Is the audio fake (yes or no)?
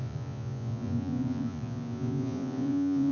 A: yes